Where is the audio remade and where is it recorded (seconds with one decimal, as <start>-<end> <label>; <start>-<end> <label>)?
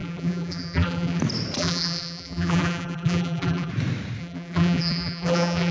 0.0-1.2 remade; 1.2-1.6 recorded; 1.6-3.7 remade; 3.7-4.2 recorded; 4.2-5.7 remade